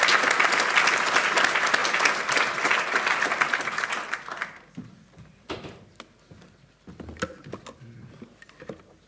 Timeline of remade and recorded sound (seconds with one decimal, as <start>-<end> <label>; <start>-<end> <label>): 0.0-9.1 recorded